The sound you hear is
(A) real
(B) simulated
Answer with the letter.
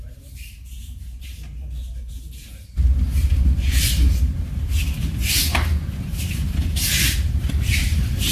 B